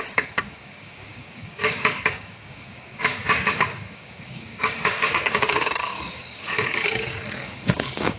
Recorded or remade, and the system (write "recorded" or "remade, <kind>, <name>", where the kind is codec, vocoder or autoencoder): remade, codec, DAC